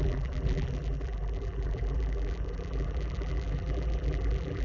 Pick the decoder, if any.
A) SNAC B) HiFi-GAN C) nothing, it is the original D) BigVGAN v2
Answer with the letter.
D